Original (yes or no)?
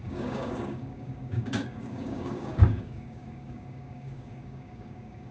no